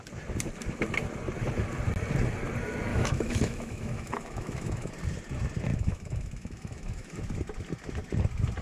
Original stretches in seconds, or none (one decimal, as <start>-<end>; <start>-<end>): 0.0-2.9; 4.9-5.7; 7.2-8.6